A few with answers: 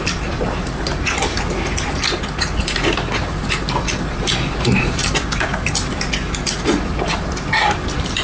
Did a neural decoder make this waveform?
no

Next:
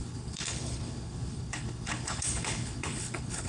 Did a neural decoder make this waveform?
yes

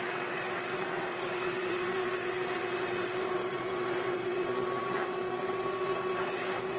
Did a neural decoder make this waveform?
yes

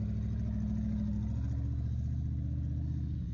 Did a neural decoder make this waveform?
no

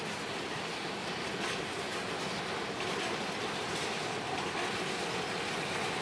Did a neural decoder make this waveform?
no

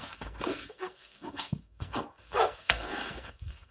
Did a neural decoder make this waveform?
yes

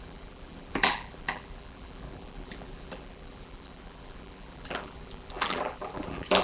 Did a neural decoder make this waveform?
yes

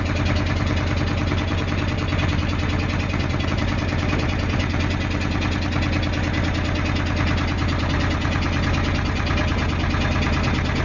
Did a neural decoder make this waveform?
no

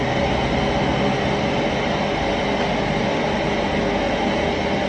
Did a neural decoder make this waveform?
no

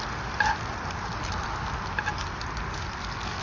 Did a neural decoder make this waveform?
no